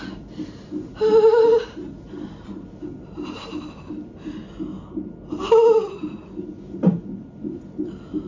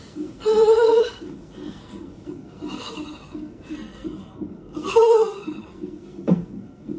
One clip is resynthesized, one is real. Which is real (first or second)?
first